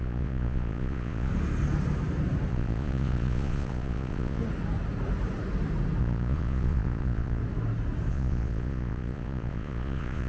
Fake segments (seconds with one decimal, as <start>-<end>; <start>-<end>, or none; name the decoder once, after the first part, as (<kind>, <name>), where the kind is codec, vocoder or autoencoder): 0.0-1.3 (vocoder, Vocos); 2.5-4.4; 6.0-7.4; 8.1-10.3